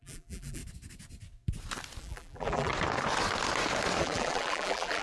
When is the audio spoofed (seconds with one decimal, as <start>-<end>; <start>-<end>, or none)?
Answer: 0.0-0.6; 2.0-2.7; 4.0-5.0